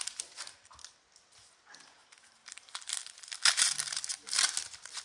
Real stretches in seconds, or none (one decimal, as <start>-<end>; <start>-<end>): 0.0-5.0